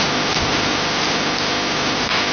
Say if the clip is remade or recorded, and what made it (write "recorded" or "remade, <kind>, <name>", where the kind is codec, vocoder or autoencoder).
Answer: recorded